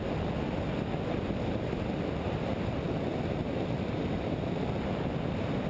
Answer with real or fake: real